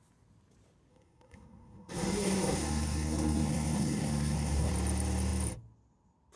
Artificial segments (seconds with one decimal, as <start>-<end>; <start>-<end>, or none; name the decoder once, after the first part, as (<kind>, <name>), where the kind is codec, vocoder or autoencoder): 0.9-4.7 (codec, SNAC)